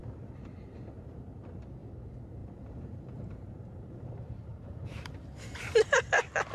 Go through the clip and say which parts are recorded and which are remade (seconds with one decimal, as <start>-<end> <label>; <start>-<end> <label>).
0.0-1.6 remade; 1.6-2.4 recorded; 2.4-6.5 remade